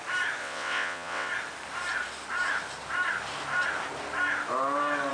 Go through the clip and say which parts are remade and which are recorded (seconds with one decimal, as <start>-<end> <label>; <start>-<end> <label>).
0.0-0.4 recorded; 0.4-1.3 remade; 1.3-5.1 recorded